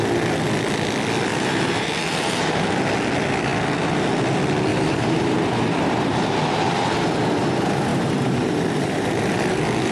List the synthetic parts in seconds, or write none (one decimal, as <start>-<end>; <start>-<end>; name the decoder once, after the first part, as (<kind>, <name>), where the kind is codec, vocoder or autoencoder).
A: 1.3-2.7 (vocoder, BigVGAN v2); 4.7-6.2; 7.9-9.1